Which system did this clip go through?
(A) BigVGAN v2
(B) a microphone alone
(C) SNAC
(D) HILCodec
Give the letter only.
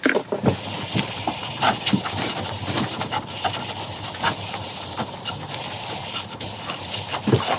B